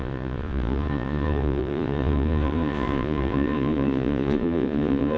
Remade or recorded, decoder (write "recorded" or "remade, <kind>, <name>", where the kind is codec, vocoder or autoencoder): remade, vocoder, Vocos